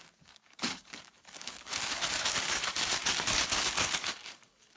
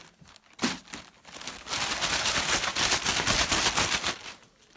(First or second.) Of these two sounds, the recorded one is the second